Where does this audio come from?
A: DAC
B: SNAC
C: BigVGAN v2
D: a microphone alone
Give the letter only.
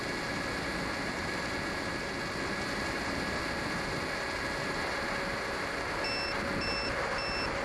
D